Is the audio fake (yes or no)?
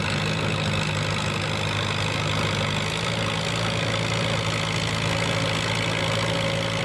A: no